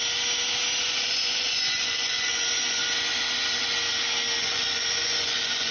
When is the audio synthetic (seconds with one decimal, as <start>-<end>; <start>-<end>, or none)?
0.8-2.8; 4.4-5.7